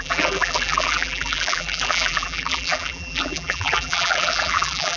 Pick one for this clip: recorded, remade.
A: remade